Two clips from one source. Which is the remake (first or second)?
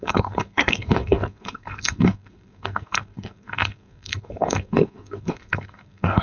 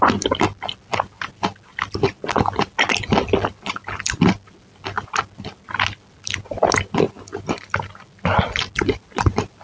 first